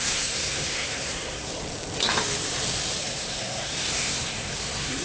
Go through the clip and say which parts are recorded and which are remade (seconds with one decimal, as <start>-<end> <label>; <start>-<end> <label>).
0.0-1.5 remade; 1.5-3.0 recorded; 3.0-5.0 remade